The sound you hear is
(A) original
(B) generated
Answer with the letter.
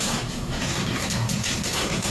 B